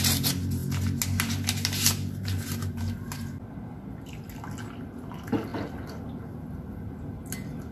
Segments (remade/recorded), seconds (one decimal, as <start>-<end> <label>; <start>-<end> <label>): 0.0-7.7 recorded

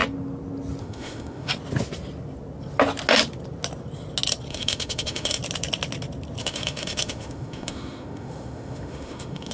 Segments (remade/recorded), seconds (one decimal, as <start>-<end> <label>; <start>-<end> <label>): 0.0-0.8 recorded; 0.8-1.5 remade; 1.5-4.5 recorded; 4.5-5.4 remade; 5.4-6.4 recorded; 6.4-9.5 remade